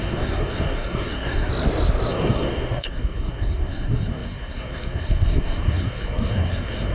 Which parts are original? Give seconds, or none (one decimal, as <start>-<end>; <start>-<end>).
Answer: 1.5-2.1